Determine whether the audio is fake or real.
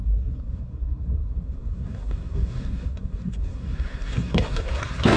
fake